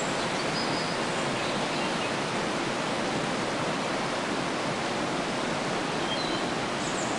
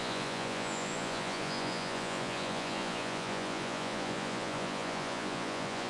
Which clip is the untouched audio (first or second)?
first